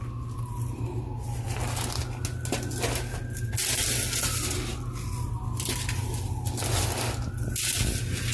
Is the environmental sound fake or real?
real